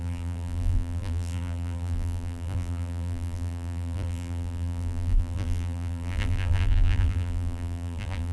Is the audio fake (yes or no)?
yes